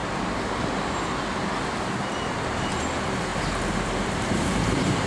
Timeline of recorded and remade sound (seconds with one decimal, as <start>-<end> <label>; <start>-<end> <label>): 0.0-1.1 remade; 1.1-3.3 recorded; 3.3-5.1 remade